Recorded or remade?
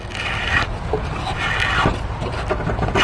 remade